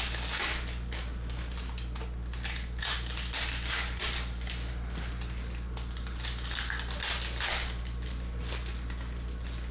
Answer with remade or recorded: recorded